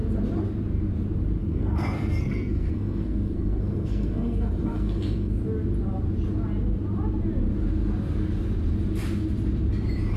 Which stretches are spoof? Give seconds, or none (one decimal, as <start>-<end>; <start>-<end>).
1.4-5.4